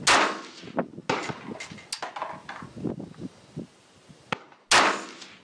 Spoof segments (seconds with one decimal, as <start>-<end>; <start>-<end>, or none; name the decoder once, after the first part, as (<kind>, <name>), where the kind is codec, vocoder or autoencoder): none